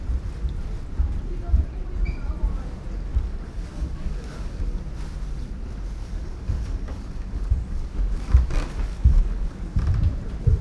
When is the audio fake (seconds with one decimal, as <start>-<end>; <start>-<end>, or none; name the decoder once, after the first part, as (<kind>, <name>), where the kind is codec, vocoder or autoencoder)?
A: 3.1-4.8 (codec, DAC); 6.0-9.8